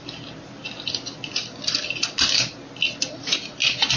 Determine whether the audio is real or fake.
real